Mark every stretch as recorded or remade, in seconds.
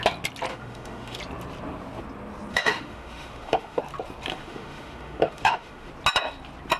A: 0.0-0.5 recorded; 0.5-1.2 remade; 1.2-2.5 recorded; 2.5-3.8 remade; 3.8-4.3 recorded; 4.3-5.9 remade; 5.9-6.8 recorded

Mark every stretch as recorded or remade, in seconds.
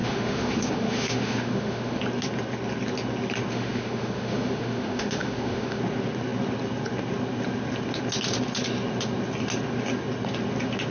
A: 0.0-2.0 remade; 2.0-3.5 recorded; 3.5-5.8 remade; 5.8-10.9 recorded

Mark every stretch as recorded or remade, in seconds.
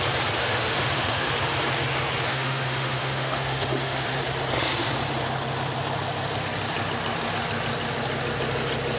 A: 0.0-0.4 recorded; 0.4-1.3 remade; 1.3-2.3 recorded; 2.3-4.2 remade; 4.2-9.0 recorded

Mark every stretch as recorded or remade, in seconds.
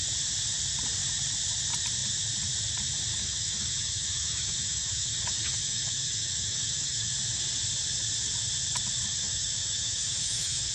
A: 0.0-3.2 recorded; 3.2-7.1 remade; 7.1-9.1 recorded; 9.1-10.7 remade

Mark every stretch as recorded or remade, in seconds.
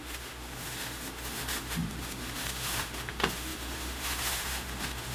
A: 0.0-5.1 remade